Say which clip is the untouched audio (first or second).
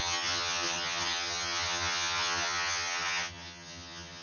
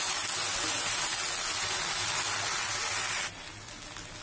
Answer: second